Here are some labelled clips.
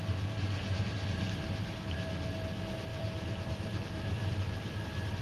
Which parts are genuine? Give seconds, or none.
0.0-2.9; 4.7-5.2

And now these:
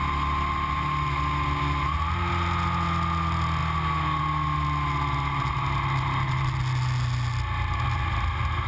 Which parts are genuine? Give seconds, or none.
0.0-8.7

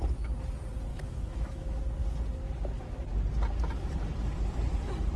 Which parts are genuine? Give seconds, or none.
0.0-0.9; 1.8-5.2

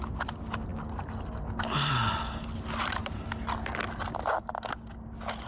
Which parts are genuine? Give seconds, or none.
0.0-5.5

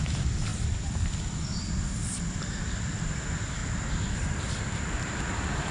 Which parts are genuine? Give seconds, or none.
0.0-0.5; 2.4-3.6; 4.4-5.7

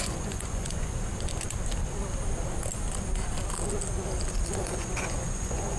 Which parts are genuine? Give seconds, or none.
1.1-4.6

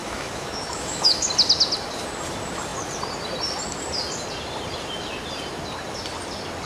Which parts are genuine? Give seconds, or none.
1.3-6.7

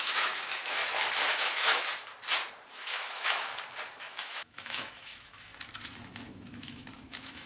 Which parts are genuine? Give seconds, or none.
0.8-1.3; 1.9-2.7; 3.5-4.0; 5.5-6.3